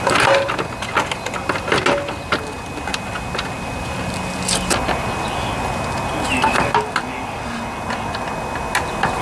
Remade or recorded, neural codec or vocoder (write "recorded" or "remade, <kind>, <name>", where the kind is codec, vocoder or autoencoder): recorded